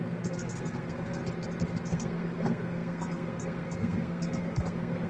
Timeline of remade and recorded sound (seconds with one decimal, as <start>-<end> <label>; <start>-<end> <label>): 0.0-1.2 remade; 1.2-1.9 recorded; 1.9-5.1 remade